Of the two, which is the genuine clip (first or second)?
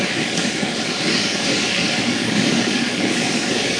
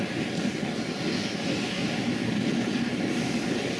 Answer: second